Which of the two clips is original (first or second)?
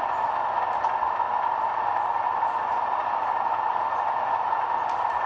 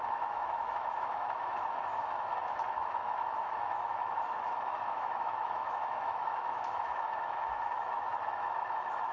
first